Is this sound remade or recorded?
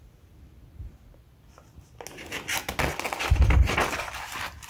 recorded